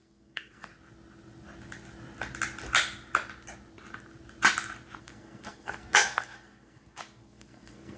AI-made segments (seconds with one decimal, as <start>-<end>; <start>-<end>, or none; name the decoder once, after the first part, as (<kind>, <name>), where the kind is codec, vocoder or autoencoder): 0.0-0.7 (codec, SNAC); 5.0-8.0